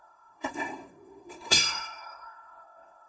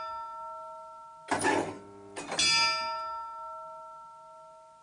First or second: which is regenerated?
first